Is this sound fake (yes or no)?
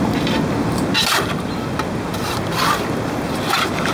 no